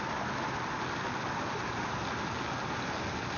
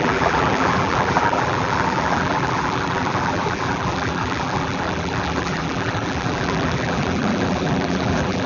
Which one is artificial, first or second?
second